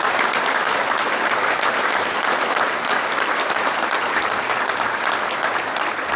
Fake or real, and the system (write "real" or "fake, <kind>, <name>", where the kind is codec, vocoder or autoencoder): real